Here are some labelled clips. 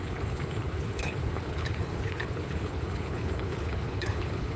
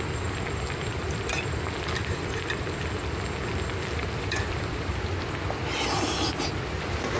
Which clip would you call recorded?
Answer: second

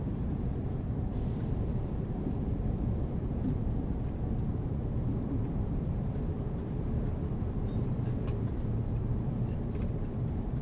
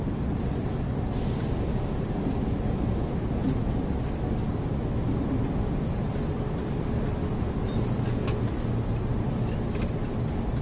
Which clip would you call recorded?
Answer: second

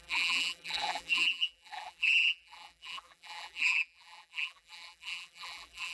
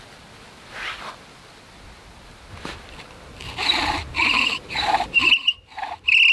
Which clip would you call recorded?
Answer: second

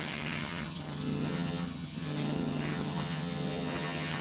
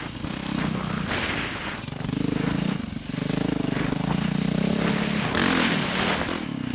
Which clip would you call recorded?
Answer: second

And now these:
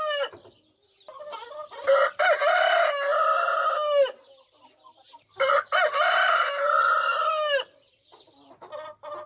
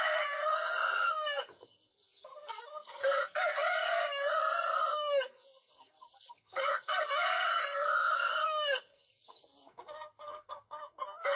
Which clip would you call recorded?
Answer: first